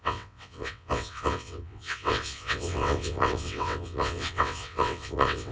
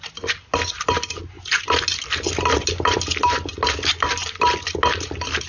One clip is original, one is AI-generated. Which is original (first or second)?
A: second